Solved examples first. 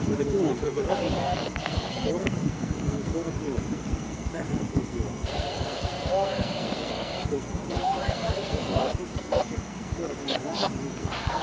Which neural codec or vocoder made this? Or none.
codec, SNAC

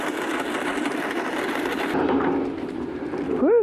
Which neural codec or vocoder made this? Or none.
vocoder, BigVGAN v2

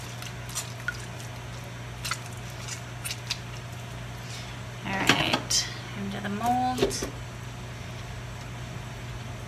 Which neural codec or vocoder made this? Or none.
none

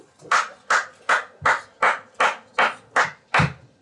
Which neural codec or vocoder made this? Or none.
none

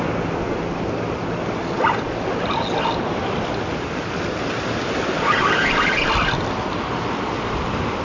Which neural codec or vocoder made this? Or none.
none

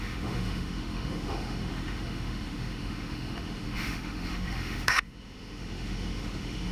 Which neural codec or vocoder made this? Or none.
autoencoder, DAC-VAE